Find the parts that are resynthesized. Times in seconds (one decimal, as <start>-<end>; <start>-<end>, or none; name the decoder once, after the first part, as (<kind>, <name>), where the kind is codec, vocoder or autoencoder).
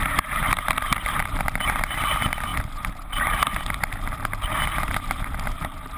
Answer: 2.5-3.6 (vocoder, BigVGAN v2)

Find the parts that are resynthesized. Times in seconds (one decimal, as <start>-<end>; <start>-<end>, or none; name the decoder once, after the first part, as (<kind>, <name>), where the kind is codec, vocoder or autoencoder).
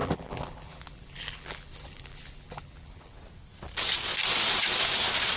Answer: 0.0-3.2 (vocoder, BigVGAN v2)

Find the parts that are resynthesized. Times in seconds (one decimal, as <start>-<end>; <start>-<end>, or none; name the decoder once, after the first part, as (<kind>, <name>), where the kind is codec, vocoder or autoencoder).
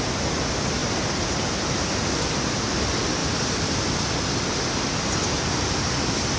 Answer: 0.8-1.8 (vocoder, BigVGAN v2)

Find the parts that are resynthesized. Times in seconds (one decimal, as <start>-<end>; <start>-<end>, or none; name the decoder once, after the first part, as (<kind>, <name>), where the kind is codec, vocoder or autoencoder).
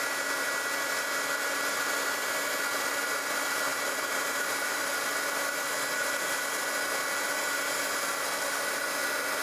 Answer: 3.7-4.9 (vocoder, BigVGAN v2)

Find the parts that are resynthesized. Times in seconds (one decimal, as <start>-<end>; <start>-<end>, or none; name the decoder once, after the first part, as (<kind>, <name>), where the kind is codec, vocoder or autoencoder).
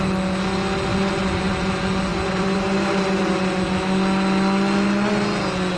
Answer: 2.1-3.2 (vocoder, BigVGAN v2)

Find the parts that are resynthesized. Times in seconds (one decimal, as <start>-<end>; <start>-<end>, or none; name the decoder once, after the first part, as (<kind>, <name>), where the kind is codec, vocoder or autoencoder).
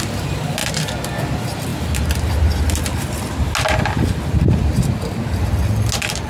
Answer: none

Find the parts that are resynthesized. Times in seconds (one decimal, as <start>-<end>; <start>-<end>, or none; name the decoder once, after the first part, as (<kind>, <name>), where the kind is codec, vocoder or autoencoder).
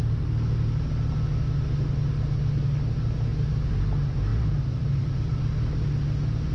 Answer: 4.3-5.4 (vocoder, BigVGAN v2)